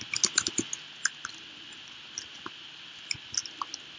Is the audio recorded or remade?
recorded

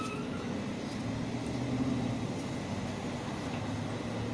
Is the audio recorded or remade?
recorded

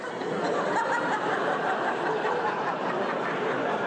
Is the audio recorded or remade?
recorded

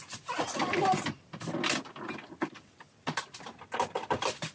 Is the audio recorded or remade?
recorded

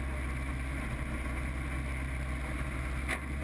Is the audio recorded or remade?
recorded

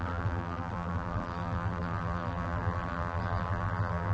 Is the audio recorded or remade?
remade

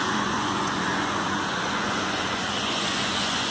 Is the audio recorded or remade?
remade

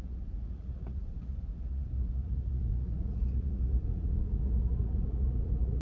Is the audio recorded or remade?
remade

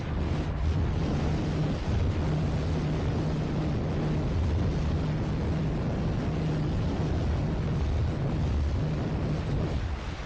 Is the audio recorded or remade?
recorded